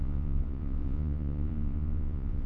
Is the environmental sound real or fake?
fake